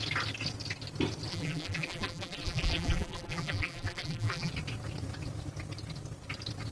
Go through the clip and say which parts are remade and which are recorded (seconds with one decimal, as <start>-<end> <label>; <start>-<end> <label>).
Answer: 0.0-1.3 recorded; 1.3-4.5 remade; 4.5-6.7 recorded